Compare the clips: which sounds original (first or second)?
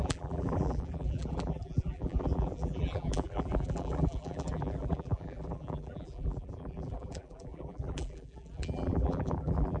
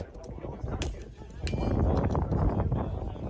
second